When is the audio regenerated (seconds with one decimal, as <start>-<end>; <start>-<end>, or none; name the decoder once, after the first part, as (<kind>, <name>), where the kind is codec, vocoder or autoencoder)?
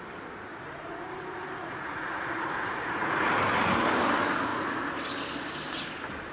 0.5-3.3 (vocoder, Vocos); 4.5-5.0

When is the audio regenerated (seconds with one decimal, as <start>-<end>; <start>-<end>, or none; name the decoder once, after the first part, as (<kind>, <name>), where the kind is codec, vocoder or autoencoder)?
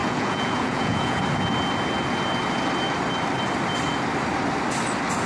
0.0-1.2 (vocoder, Vocos)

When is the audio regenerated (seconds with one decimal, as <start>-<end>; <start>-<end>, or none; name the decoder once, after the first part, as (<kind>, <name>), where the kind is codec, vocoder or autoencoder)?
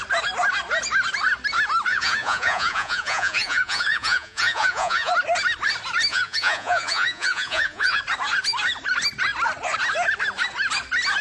1.9-5.1 (vocoder, Vocos); 6.1-8.0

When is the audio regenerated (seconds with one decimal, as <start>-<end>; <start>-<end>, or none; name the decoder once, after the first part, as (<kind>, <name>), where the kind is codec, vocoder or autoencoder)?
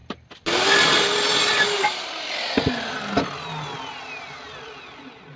none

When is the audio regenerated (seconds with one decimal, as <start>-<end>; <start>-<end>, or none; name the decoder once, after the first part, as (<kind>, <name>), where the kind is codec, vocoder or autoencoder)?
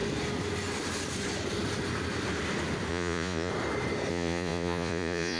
2.9-3.5 (vocoder, Vocos); 4.1-5.4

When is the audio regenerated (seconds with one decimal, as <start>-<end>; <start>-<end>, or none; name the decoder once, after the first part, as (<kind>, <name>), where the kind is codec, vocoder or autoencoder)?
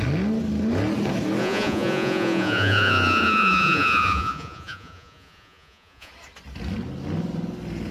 1.4-6.1 (vocoder, Vocos)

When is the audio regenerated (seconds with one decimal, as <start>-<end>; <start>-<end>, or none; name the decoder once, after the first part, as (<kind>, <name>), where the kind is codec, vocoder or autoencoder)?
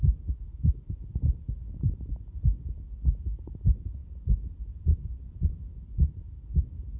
none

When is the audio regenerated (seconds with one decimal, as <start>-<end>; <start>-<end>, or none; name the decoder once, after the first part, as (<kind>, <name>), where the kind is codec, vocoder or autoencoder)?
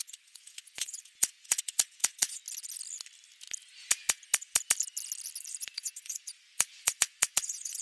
0.0-2.4 (vocoder, Vocos); 5.6-7.8